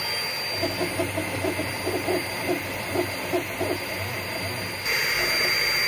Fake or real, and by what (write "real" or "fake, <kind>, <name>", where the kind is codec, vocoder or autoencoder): real